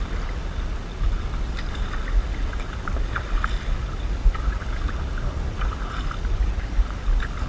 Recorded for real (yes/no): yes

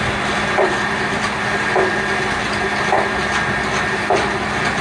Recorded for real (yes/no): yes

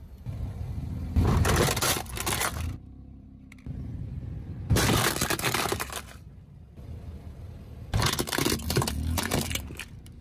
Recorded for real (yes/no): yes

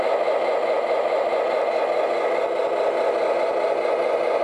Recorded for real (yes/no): yes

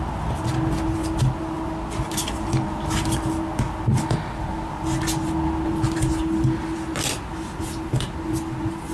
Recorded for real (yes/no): yes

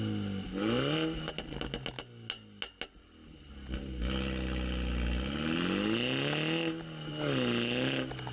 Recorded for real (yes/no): yes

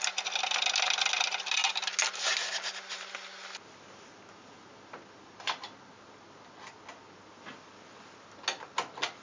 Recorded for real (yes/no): yes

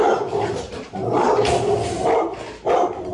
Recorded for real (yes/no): yes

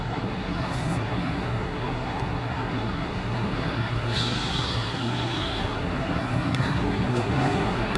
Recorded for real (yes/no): no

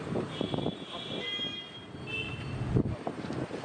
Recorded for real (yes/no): yes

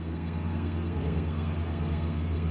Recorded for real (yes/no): no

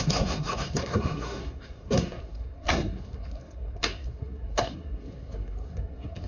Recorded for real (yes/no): no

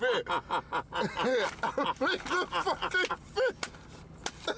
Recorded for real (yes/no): yes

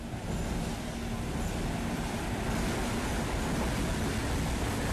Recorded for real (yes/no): yes